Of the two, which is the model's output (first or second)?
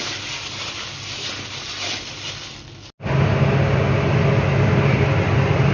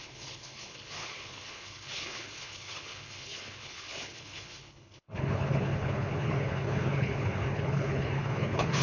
second